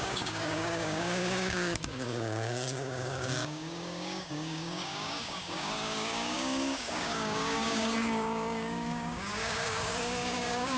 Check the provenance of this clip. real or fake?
fake